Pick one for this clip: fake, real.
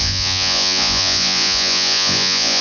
fake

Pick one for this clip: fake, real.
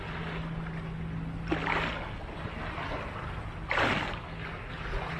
real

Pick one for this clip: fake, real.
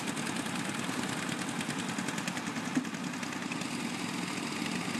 real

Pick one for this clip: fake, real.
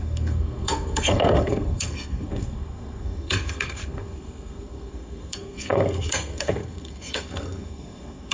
fake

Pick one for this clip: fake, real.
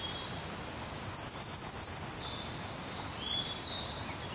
real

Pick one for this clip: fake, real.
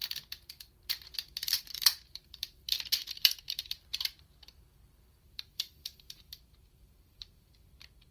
fake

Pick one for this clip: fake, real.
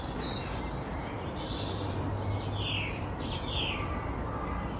real